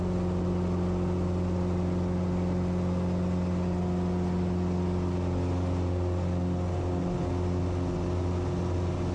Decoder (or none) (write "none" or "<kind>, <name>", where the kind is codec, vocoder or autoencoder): none